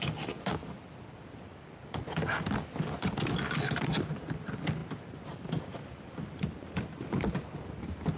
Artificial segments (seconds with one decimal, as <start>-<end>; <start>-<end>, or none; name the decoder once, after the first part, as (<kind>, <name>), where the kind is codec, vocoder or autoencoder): none